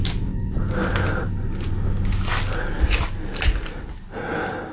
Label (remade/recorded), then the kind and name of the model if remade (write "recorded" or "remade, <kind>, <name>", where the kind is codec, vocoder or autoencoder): recorded